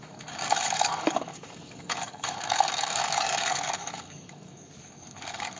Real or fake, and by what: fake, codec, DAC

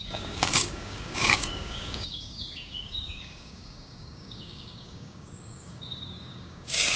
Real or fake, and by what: fake, codec, DAC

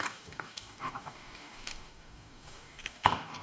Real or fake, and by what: fake, codec, DAC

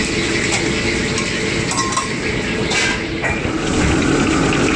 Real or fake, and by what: real